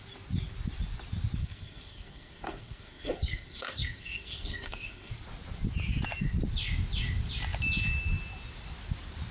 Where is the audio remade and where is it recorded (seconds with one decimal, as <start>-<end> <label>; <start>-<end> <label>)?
0.0-1.4 recorded; 1.4-5.1 remade; 5.1-9.3 recorded